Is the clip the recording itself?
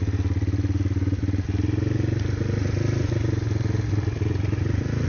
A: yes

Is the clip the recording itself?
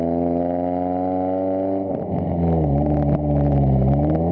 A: yes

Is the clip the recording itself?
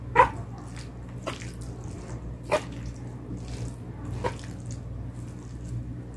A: yes